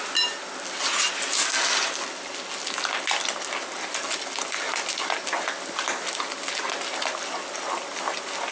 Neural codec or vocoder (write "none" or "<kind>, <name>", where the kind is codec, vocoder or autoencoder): none